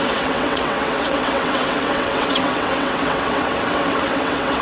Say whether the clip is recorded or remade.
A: remade